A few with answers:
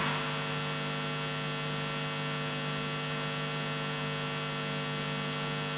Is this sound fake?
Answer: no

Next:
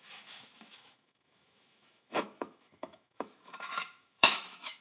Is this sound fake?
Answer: yes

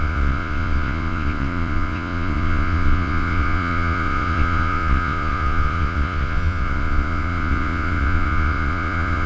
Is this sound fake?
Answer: yes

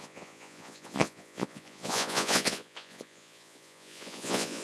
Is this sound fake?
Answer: yes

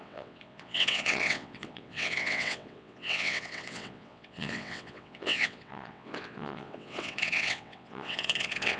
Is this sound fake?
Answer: yes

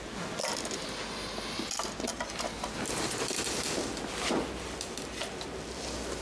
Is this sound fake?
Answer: no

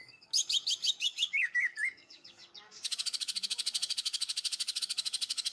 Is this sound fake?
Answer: yes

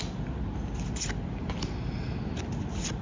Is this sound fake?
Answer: no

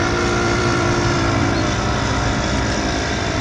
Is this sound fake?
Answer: yes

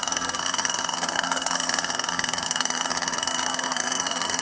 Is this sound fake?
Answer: yes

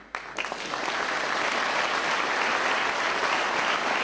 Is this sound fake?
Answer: no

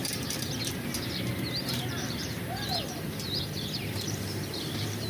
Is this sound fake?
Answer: yes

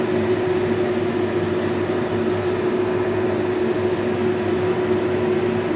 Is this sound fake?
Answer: no